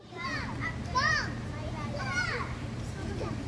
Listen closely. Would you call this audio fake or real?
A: fake